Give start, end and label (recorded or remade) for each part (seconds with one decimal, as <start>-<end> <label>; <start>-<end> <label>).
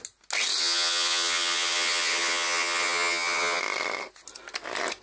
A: 0.0-0.6 recorded; 0.6-3.6 remade; 3.6-5.0 recorded